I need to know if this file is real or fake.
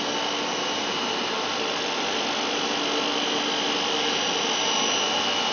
real